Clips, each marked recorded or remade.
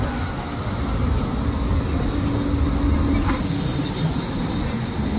recorded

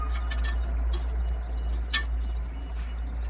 recorded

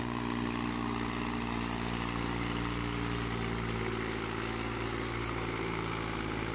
recorded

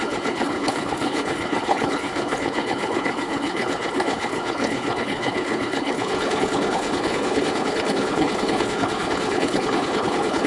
remade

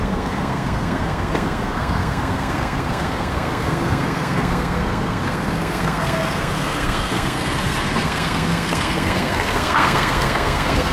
remade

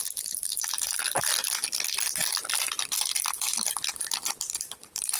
recorded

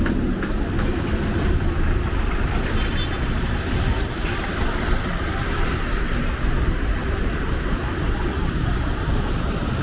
remade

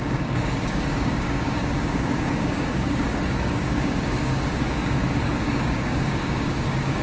remade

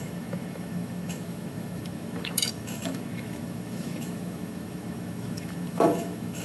remade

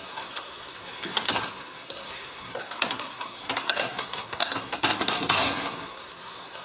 remade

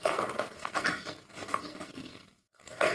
remade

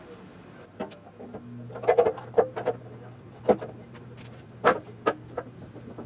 recorded